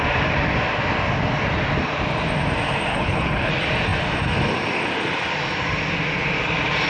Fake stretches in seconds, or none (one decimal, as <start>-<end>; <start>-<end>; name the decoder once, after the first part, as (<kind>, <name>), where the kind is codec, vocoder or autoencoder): 2.9-3.5 (codec, HILCodec)